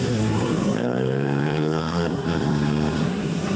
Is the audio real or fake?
fake